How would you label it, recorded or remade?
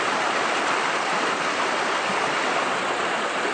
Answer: recorded